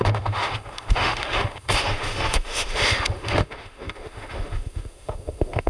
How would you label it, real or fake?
fake